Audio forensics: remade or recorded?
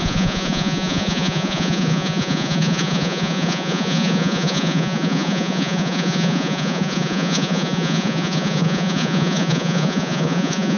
remade